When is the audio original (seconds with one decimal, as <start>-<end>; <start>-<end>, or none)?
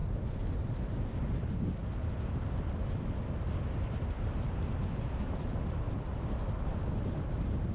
none